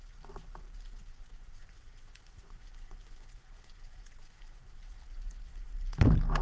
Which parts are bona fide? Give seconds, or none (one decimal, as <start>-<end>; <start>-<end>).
0.0-1.0; 4.8-6.4